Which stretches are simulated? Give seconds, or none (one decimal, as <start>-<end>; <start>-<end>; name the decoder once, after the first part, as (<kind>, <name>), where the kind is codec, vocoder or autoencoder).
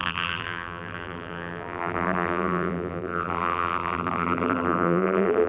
0.0-5.5 (vocoder, BigVGAN v2)